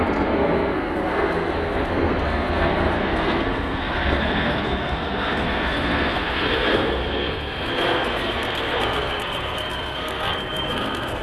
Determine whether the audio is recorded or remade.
remade